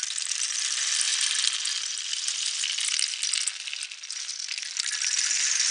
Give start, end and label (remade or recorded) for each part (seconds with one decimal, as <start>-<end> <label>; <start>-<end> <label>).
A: 0.0-5.7 recorded